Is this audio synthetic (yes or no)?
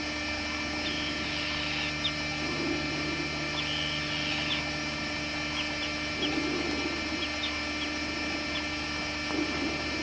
yes